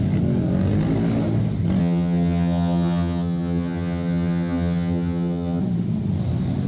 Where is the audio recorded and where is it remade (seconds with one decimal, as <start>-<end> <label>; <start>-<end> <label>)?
0.0-1.8 recorded; 1.8-5.6 remade; 5.6-6.7 recorded